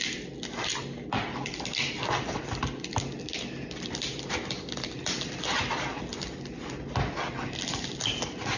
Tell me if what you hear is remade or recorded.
recorded